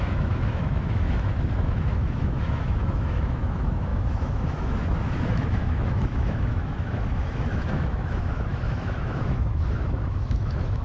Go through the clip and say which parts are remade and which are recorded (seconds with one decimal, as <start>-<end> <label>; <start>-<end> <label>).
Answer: 0.0-10.8 remade